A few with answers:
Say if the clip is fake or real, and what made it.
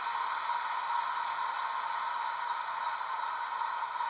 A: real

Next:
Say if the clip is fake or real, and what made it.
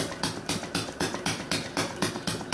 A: real